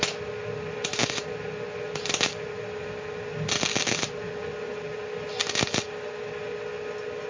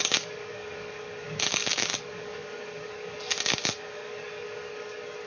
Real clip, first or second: first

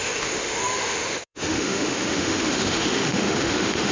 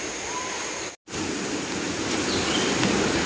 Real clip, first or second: second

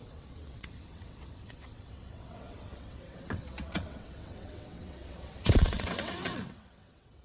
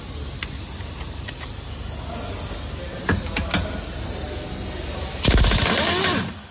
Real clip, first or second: second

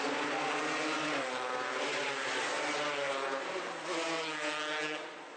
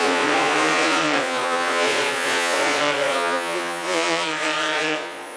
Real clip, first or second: first